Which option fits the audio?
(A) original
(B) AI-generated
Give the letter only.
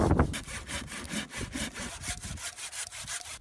A